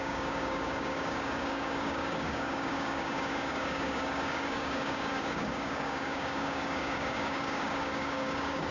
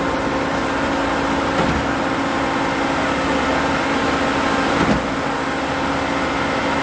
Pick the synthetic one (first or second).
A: first